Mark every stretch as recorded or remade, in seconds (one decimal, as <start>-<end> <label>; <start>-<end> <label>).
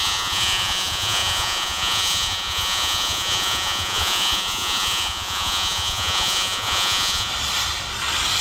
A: 0.0-7.3 remade; 7.3-8.4 recorded